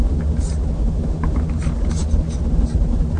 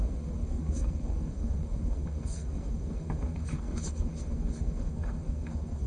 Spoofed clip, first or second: second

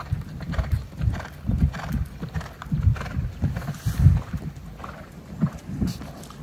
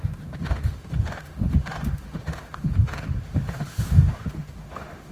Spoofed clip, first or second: second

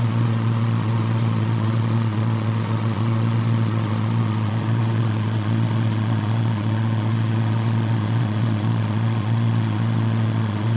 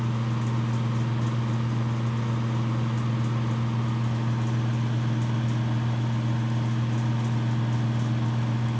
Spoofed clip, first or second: first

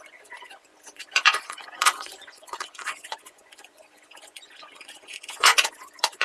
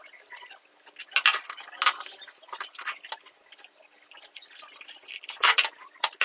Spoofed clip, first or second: first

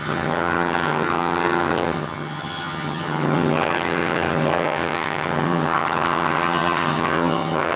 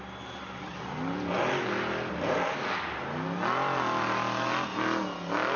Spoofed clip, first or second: first